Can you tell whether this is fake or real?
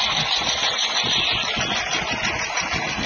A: real